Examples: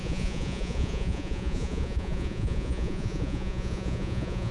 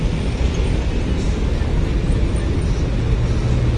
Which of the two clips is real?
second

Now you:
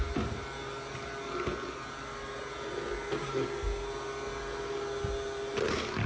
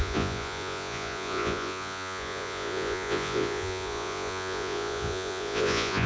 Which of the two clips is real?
first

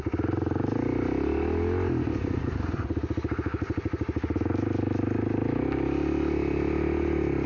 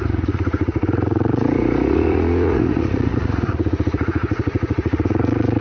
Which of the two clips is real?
first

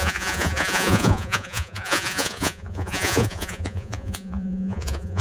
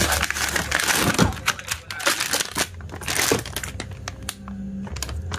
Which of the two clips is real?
second